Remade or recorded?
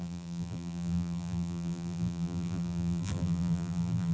remade